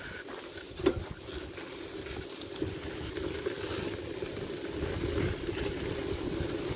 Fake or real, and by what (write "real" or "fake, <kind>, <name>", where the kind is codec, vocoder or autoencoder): real